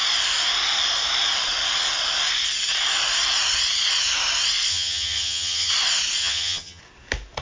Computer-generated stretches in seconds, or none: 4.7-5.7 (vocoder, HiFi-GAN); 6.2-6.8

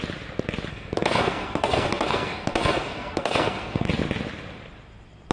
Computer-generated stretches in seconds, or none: 0.7-3.9 (codec, SNAC)

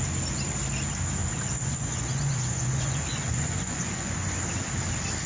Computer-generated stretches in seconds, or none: 1.2-4.4 (vocoder, Vocos)

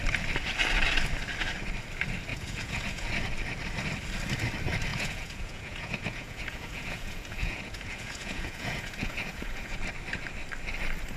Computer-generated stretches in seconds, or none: 2.3-3.1 (vocoder, Vocos); 4.9-9.8